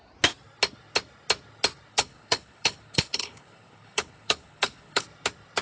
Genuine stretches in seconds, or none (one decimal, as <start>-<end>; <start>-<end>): 0.0-1.9; 5.0-5.6